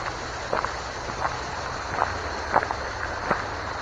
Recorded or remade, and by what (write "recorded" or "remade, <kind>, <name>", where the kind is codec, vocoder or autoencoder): recorded